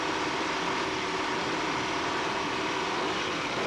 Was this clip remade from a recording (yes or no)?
no